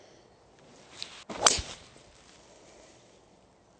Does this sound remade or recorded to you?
recorded